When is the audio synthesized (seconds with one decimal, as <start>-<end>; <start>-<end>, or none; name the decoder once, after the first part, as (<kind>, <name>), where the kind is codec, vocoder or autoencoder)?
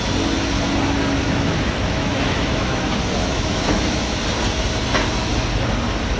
1.2-2.8 (autoencoder, DAC-VAE); 3.2-4.2